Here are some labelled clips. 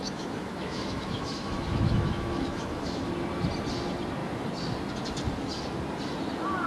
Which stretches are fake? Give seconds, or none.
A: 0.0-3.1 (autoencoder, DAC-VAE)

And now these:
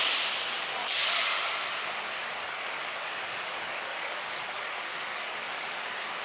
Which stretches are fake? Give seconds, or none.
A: 0.8-1.4 (codec, DAC); 2.2-6.2

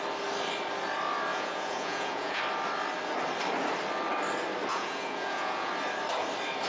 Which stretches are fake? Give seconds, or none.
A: 1.3-2.4 (vocoder, Vocos); 4.7-5.7

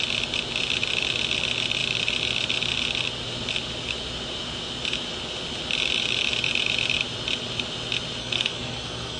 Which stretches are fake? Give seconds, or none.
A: 8.2-9.2 (codec, SNAC)